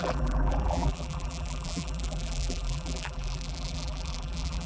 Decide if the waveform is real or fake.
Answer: fake